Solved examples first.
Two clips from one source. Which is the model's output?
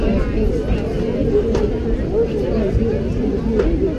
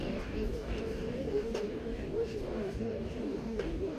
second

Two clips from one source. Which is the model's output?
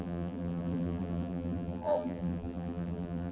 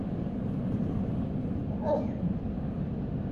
first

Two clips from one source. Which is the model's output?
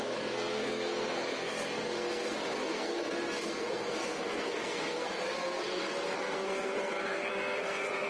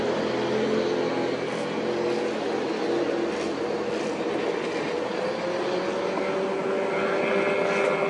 first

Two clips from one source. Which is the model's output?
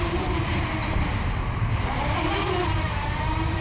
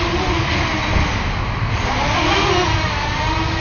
first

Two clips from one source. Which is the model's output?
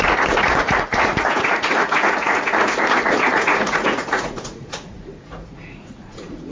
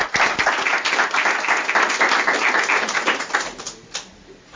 first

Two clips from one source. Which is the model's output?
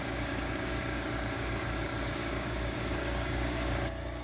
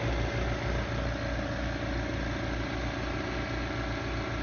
first